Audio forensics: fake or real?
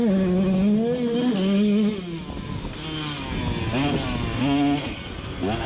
real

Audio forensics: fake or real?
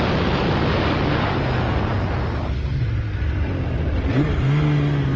real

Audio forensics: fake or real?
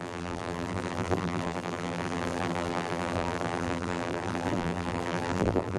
fake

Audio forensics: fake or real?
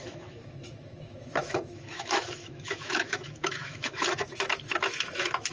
fake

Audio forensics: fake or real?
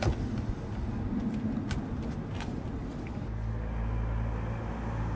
real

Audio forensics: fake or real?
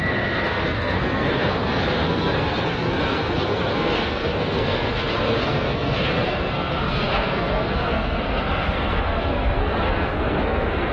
fake